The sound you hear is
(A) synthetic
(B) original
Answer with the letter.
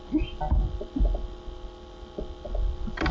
B